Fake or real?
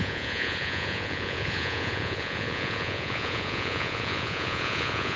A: fake